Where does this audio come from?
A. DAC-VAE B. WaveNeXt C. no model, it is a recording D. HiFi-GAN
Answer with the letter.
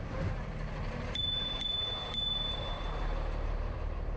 C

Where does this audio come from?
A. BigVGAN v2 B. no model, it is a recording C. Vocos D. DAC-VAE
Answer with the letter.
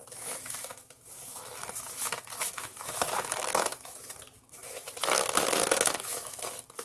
D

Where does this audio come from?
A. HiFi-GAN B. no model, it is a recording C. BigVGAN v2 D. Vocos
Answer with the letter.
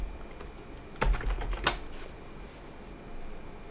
B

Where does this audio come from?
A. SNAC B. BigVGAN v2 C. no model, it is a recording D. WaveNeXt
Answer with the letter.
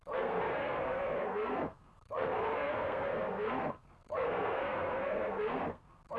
A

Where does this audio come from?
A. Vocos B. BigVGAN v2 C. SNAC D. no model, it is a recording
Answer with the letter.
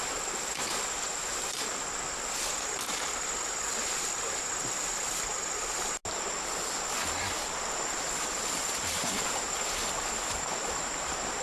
D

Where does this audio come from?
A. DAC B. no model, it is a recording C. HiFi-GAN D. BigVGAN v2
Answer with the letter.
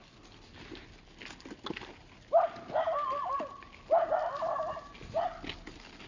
B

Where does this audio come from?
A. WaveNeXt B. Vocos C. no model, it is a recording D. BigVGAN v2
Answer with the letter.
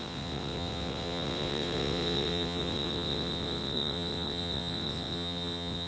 A